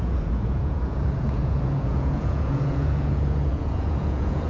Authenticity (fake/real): fake